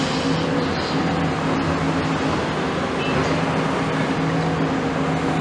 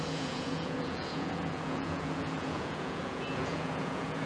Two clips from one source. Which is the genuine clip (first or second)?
first